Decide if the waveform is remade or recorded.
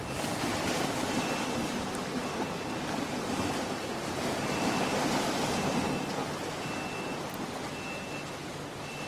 recorded